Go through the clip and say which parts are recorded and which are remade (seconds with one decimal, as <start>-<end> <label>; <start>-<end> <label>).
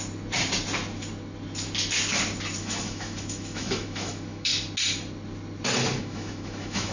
0.0-2.6 recorded; 2.6-4.5 remade; 4.5-6.0 recorded; 6.0-6.9 remade